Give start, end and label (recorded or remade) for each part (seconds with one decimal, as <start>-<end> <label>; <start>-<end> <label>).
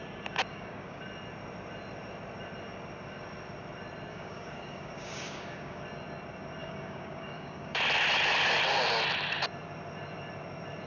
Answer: 0.0-0.5 recorded; 0.5-1.0 remade; 1.0-4.1 recorded; 4.1-5.8 remade; 5.8-6.6 recorded; 6.6-7.8 remade; 7.8-10.9 recorded